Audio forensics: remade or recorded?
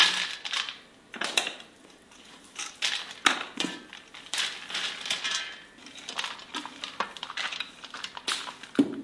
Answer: recorded